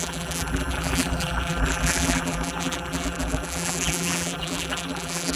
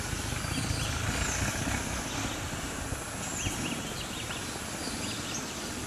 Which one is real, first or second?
second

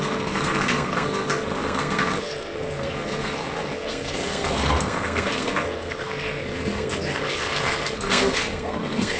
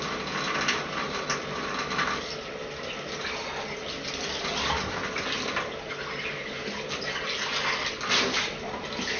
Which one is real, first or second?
second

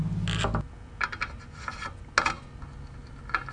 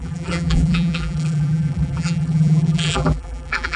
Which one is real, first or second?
first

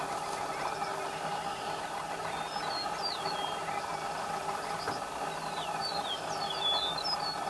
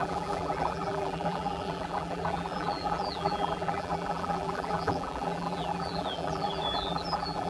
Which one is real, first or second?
first